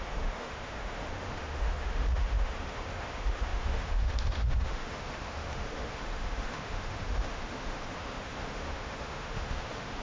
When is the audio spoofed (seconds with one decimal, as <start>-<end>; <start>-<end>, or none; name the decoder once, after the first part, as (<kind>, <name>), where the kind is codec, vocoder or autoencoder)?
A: 0.0-10.0 (autoencoder, DAC-VAE)